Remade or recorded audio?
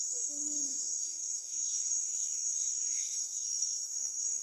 remade